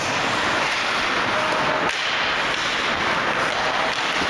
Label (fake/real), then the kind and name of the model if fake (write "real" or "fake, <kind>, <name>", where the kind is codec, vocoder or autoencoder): real